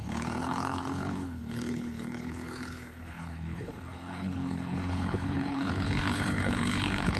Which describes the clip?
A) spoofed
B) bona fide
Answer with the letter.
A